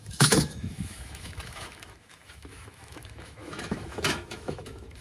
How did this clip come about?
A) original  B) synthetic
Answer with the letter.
B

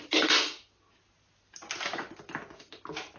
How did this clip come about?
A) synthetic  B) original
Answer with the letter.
B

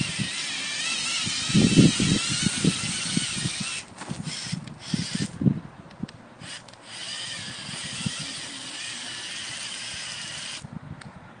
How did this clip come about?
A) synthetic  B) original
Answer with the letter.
B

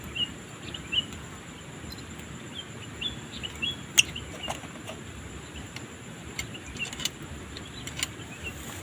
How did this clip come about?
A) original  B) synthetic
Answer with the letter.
A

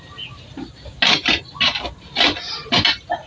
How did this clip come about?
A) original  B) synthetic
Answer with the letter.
A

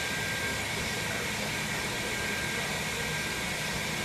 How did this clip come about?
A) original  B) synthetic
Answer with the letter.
A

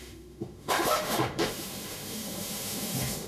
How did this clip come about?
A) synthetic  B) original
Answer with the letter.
A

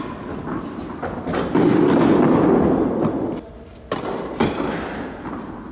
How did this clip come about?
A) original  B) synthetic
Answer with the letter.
A